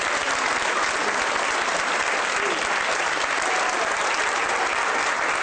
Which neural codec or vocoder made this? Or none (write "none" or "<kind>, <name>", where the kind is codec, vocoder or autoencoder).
none